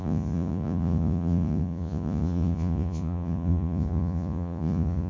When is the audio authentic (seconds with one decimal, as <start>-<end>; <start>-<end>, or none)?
none